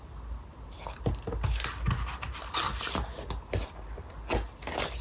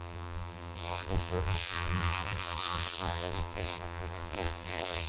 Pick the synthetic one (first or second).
second